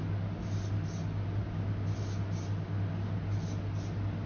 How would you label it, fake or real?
real